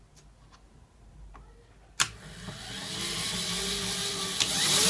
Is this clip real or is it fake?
real